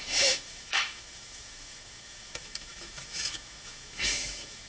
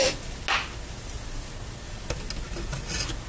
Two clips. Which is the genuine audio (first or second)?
second